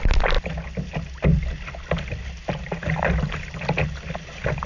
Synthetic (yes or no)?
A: no